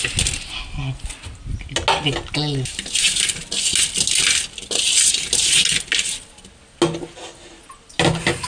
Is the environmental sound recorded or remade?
recorded